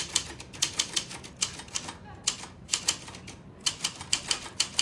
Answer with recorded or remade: recorded